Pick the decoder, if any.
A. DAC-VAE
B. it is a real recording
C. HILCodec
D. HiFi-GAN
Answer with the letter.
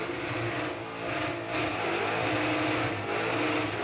B